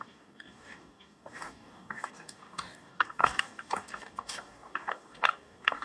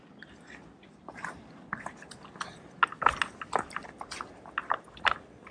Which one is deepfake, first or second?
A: first